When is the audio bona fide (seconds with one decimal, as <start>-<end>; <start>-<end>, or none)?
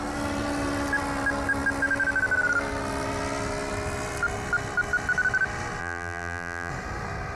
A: 0.0-5.8; 6.7-7.3